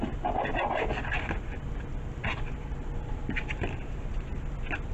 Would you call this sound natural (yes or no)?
yes